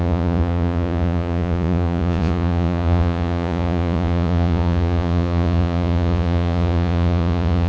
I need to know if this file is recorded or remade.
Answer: remade